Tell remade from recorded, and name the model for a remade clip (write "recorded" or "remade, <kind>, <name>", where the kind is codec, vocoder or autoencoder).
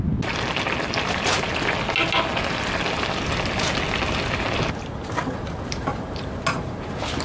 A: recorded